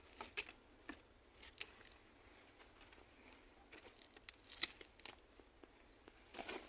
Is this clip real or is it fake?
real